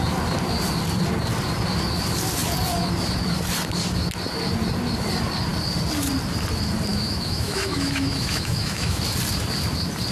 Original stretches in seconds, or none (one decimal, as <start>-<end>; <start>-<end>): 0.0-6.9; 9.0-10.1